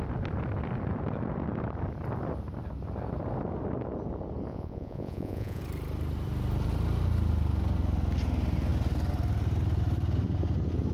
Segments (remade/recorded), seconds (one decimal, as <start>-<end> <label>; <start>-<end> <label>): 0.0-4.5 recorded; 4.5-5.6 remade; 5.6-10.9 recorded